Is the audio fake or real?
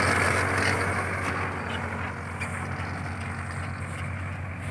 real